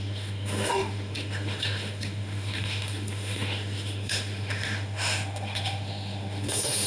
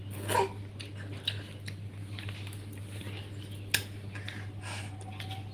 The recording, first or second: second